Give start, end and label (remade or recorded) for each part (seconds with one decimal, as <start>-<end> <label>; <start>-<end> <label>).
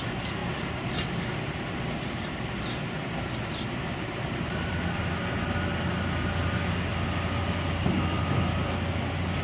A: 0.0-9.4 recorded